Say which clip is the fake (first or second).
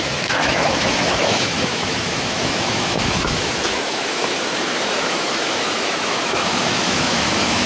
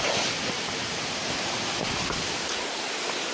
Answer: first